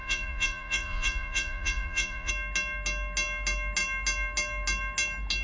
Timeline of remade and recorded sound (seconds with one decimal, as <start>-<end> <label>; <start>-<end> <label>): 0.0-2.3 remade; 2.3-5.4 recorded